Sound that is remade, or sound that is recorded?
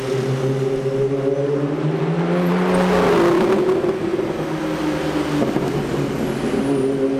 recorded